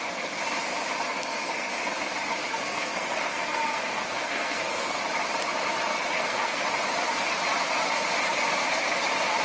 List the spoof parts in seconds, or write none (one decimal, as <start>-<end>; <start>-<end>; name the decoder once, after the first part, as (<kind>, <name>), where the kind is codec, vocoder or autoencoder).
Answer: 1.1-1.7 (codec, SNAC); 2.5-5.0; 5.9-6.6